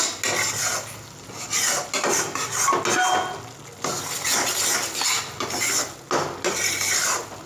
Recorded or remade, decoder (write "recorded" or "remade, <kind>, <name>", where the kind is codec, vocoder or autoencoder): recorded